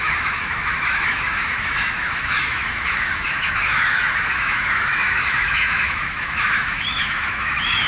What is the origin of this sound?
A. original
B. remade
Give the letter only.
B